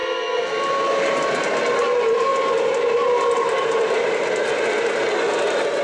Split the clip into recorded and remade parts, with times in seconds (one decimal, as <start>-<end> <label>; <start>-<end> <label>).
0.0-5.8 recorded